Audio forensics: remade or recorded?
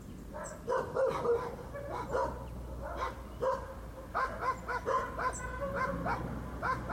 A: recorded